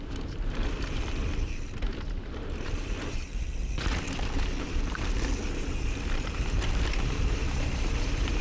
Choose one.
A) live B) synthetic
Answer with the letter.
B